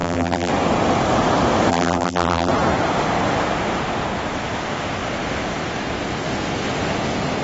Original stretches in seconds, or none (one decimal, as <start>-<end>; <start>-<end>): 0.5-1.7; 2.5-7.4